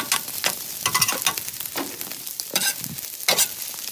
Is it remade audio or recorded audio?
recorded